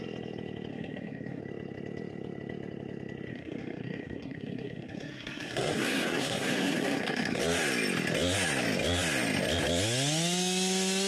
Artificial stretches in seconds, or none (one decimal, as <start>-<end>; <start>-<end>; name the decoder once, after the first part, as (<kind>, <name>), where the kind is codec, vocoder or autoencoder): 0.7-1.4 (codec, SNAC); 3.3-7.4